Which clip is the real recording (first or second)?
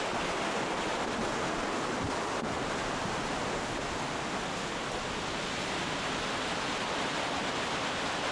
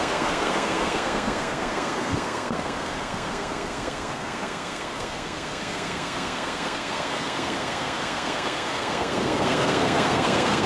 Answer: first